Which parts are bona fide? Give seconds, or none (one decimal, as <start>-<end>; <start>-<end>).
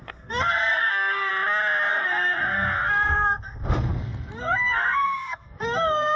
1.3-1.9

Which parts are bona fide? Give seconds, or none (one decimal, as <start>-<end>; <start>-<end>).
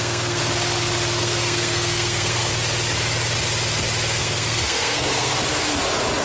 0.4-1.2; 2.5-4.2; 5.3-6.2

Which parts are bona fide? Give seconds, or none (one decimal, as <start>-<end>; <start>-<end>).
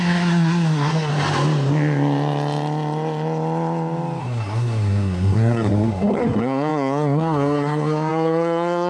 1.1-4.2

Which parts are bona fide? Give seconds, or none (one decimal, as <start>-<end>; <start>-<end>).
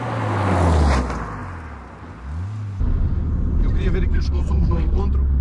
0.0-4.1; 5.0-5.4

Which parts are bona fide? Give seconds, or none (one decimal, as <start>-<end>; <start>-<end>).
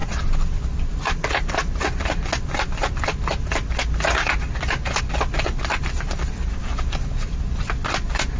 0.0-8.4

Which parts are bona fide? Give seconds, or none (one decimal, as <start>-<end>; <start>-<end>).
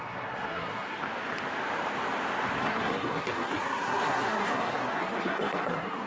1.0-2.6